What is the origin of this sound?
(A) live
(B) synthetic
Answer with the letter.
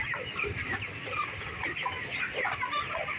A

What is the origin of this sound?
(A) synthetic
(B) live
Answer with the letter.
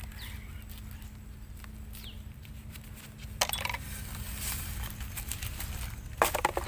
B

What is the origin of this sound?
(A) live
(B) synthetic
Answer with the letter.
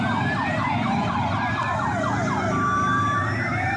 A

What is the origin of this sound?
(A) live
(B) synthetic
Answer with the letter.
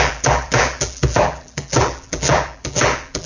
B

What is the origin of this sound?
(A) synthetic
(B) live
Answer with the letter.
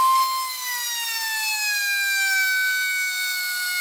B